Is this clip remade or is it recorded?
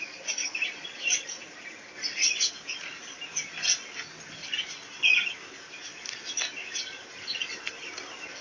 recorded